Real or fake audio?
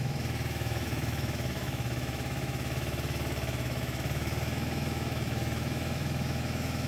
fake